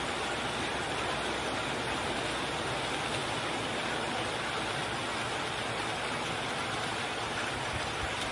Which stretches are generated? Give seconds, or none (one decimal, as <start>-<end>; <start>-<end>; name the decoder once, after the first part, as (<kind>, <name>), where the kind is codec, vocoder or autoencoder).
none